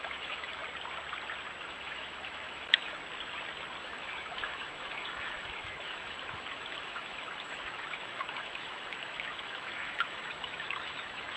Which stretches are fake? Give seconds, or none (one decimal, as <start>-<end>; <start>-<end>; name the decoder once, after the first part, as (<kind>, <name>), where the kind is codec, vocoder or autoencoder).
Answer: 0.0-0.6 (autoencoder, DAC-VAE); 1.6-3.0; 3.8-11.4